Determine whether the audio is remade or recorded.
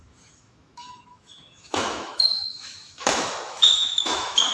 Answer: remade